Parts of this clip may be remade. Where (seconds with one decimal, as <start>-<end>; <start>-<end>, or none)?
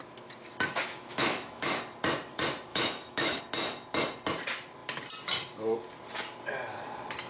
1.1-1.8; 2.7-3.4